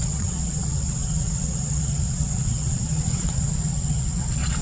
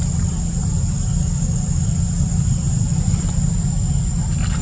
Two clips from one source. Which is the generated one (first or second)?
first